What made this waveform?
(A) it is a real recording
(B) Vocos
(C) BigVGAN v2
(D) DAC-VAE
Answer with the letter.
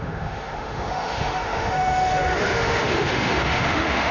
D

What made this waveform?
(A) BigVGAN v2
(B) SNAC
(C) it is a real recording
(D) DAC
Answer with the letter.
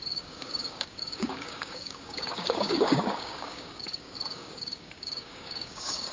D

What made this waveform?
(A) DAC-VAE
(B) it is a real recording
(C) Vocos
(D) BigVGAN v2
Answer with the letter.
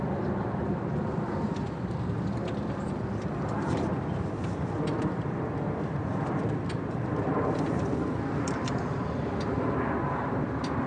D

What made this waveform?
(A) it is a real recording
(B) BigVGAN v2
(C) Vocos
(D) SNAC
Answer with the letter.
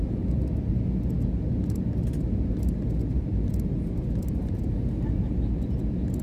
A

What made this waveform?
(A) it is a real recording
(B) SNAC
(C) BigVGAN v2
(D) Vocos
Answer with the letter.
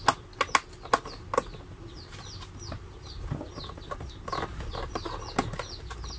A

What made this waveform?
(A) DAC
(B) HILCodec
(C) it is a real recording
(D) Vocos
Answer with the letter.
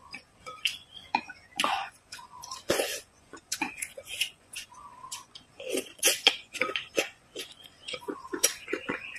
D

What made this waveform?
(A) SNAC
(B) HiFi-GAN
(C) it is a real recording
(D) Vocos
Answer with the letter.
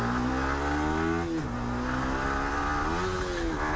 C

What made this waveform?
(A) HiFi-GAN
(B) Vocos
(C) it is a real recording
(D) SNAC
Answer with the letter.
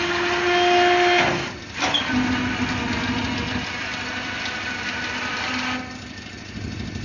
C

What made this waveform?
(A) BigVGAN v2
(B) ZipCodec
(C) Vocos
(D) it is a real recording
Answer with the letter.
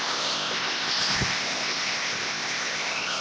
B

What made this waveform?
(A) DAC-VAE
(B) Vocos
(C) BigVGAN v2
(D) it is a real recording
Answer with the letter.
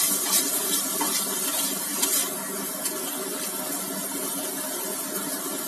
D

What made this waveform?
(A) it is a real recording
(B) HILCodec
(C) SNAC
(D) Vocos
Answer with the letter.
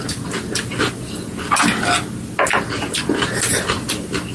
A